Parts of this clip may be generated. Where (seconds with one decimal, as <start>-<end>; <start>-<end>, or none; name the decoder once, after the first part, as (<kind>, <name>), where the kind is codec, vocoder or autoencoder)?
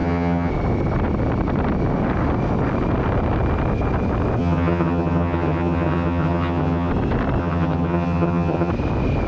0.0-0.5 (vocoder, HiFi-GAN); 4.4-6.9; 7.4-8.7